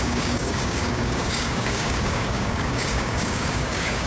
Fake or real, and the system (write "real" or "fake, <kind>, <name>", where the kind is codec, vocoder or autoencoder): fake, codec, DAC